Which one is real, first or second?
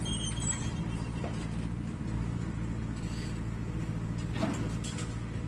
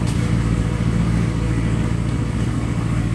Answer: first